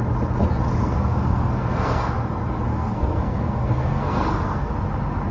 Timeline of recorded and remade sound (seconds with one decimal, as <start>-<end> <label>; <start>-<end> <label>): 0.0-0.8 recorded; 0.8-2.1 remade; 2.1-2.7 recorded; 2.7-4.7 remade; 4.7-5.3 recorded